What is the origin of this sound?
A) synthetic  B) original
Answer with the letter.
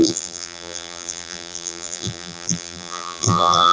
A